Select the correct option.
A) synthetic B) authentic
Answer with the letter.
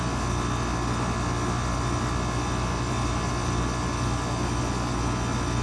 B